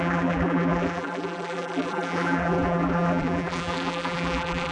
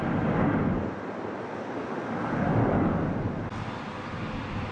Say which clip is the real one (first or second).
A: second